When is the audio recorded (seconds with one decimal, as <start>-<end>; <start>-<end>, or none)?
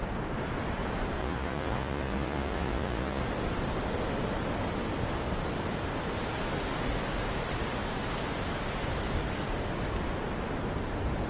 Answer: 0.0-1.2; 3.2-11.3